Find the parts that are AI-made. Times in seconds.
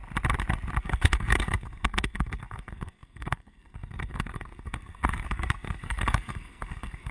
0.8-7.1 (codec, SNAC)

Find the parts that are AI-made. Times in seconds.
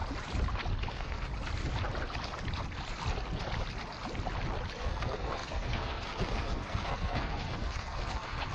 0.9-1.3 (codec, SNAC); 4.8-8.5